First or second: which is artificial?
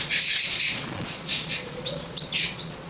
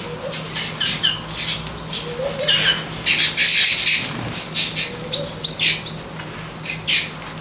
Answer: first